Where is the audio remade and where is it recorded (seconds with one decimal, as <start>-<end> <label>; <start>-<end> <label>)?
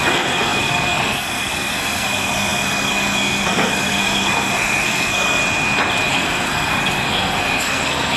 0.0-5.4 remade; 5.4-6.1 recorded; 6.1-8.2 remade